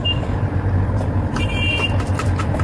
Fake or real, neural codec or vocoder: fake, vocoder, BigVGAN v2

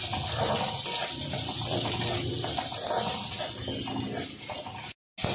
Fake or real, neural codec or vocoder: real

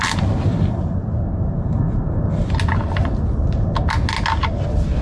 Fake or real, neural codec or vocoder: real